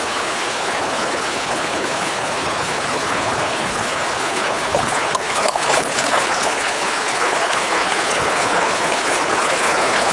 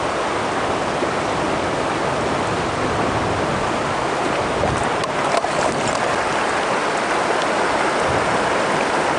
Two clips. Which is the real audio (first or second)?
second